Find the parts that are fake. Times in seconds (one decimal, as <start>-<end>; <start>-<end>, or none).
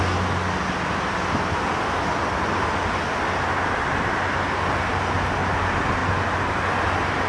6.0-6.6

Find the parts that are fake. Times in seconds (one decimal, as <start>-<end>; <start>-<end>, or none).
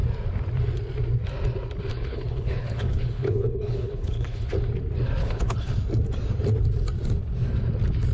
1.9-4.5; 5.2-5.7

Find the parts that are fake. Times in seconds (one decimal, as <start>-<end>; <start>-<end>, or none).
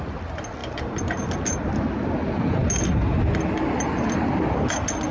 none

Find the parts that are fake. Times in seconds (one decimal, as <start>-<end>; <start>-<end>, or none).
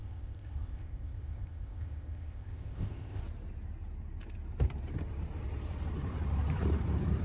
0.0-3.2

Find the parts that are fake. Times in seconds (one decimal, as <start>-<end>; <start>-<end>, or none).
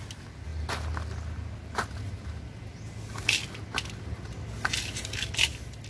none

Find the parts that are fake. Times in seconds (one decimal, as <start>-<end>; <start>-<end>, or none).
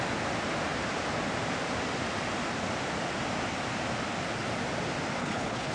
5.2-5.7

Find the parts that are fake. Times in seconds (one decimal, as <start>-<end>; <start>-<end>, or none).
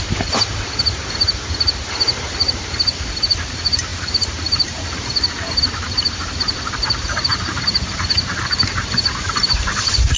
0.0-10.2